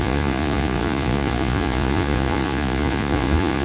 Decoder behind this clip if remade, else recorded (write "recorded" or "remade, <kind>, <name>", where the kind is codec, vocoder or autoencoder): remade, vocoder, Vocos